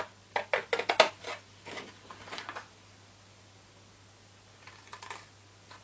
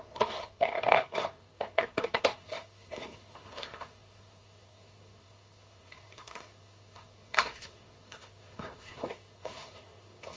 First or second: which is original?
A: first